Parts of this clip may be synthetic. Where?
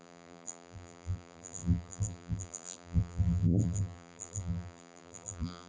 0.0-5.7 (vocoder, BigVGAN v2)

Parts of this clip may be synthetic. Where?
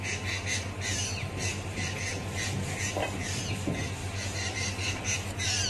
4.0-5.0 (vocoder, BigVGAN v2)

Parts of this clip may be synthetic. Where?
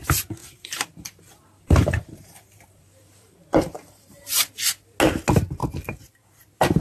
0.4-4.5 (vocoder, BigVGAN v2)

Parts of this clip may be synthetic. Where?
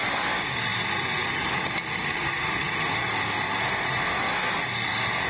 0.0-0.7 (vocoder, BigVGAN v2); 3.9-5.3